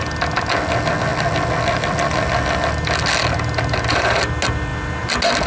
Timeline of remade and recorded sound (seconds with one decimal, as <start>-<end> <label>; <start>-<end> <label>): 0.0-5.5 recorded